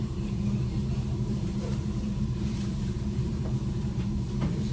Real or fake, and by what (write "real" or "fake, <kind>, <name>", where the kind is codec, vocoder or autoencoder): fake, vocoder, BigVGAN v2